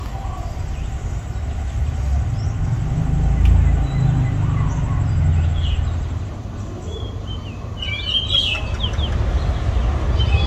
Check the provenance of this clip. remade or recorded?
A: recorded